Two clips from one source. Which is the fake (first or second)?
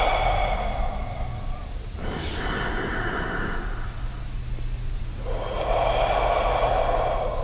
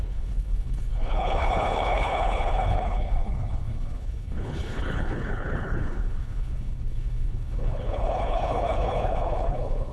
second